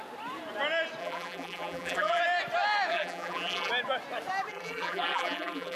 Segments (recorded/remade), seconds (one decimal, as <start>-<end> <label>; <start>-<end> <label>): 0.0-1.0 recorded; 1.0-2.2 remade; 2.2-2.9 recorded; 2.9-3.7 remade; 3.7-4.5 recorded; 4.5-5.8 remade